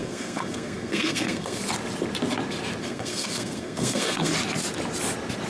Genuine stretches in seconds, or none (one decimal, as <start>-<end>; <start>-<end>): 1.6-2.8; 4.3-5.5